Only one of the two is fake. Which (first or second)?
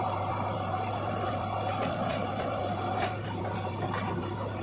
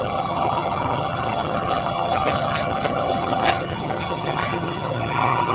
second